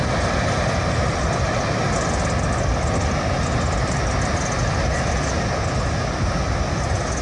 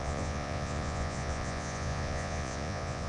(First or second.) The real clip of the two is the first